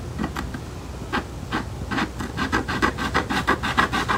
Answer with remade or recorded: recorded